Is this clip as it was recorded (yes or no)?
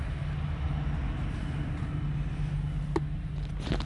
yes